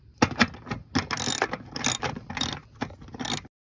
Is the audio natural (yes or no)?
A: yes